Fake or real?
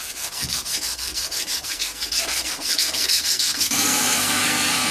fake